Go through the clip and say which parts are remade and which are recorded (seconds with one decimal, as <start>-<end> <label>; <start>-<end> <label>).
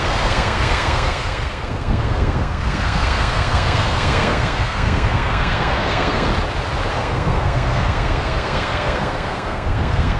0.0-6.3 remade; 6.3-6.9 recorded; 6.9-10.2 remade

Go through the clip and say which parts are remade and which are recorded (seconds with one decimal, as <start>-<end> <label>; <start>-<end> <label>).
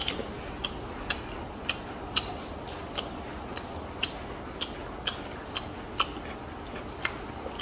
0.0-7.6 recorded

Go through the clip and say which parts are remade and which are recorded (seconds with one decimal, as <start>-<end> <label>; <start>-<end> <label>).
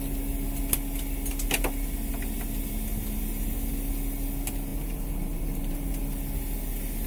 0.0-4.7 recorded; 4.7-6.0 remade; 6.0-7.1 recorded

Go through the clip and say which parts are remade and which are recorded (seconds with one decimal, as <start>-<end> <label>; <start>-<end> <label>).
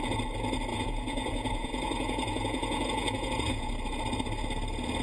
0.0-0.7 recorded; 0.7-3.7 remade; 3.7-5.0 recorded